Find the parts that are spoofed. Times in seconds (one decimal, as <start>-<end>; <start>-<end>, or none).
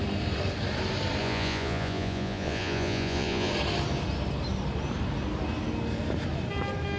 1.2-3.5